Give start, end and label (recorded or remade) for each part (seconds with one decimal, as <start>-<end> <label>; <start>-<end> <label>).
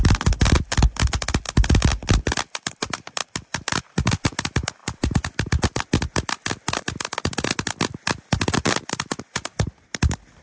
0.0-3.2 recorded; 3.2-3.8 remade; 3.8-4.8 recorded; 4.8-5.5 remade; 5.5-10.4 recorded